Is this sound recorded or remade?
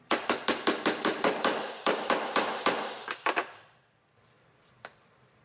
remade